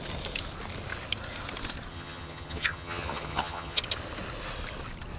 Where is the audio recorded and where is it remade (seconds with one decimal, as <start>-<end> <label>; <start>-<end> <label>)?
0.0-1.9 recorded; 1.9-3.8 remade; 3.8-5.2 recorded